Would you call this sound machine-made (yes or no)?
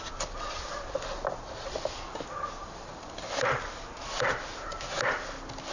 no